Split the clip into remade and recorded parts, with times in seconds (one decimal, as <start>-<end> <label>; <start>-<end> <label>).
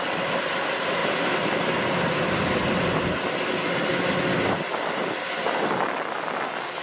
0.0-1.0 recorded; 1.0-3.9 remade; 3.9-6.8 recorded